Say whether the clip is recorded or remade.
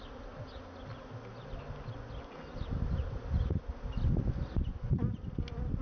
recorded